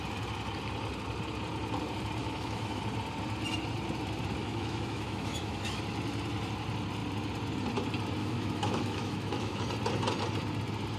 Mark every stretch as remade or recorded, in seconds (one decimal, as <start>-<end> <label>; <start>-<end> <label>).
0.0-2.2 recorded; 2.2-2.8 remade; 2.8-4.4 recorded; 4.4-5.8 remade; 5.8-8.2 recorded; 8.2-9.6 remade; 9.6-11.0 recorded